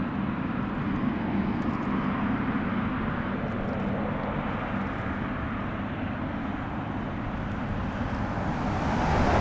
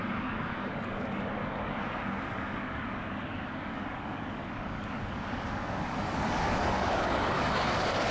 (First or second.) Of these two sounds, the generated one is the second